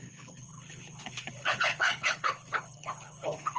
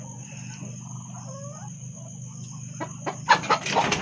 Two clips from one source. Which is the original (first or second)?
second